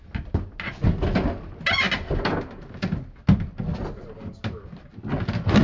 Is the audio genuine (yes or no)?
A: yes